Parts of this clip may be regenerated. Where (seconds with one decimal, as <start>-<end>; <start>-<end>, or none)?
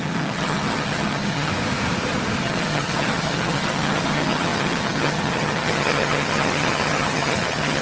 0.0-1.5; 2.4-7.8